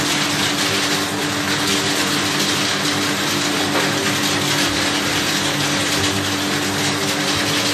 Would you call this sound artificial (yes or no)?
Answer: no